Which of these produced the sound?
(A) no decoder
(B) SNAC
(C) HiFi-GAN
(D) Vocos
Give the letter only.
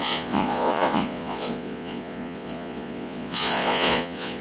D